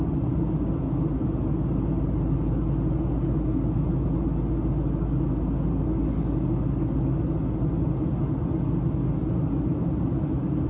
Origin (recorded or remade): recorded